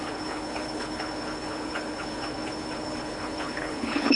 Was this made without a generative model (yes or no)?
no